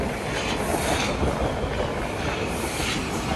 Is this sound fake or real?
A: real